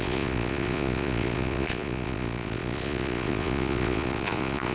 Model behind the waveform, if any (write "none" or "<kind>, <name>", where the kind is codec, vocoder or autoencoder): vocoder, Vocos